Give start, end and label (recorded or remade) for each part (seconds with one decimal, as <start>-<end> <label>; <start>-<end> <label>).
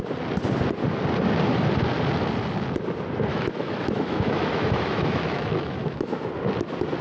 0.0-3.3 recorded; 3.3-6.3 remade; 6.3-7.0 recorded